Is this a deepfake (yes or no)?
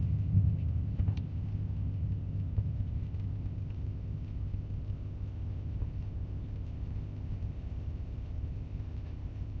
yes